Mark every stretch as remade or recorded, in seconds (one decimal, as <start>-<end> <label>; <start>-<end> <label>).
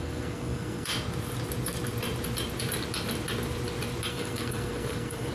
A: 0.0-0.9 remade; 0.9-4.1 recorded; 4.1-5.3 remade